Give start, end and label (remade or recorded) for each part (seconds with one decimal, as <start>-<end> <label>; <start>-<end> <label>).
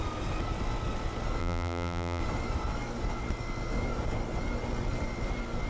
0.0-1.4 recorded; 1.4-2.2 remade; 2.2-5.7 recorded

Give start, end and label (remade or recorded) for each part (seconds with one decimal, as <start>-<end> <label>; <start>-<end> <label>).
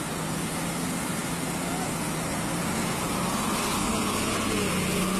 0.0-5.2 recorded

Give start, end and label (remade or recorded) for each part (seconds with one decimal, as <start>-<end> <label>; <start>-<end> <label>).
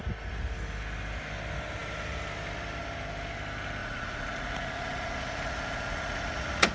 0.0-3.8 recorded; 3.8-6.7 remade